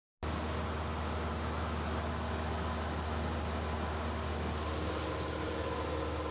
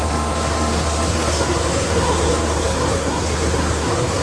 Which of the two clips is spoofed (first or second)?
second